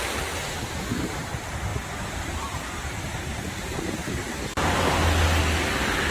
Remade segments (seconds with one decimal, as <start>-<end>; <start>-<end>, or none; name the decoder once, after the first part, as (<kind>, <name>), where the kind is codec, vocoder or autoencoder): none